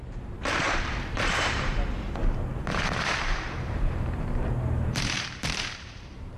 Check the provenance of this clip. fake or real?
fake